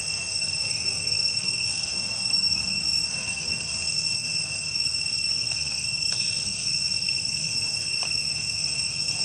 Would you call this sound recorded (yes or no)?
no